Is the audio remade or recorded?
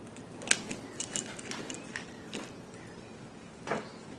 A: recorded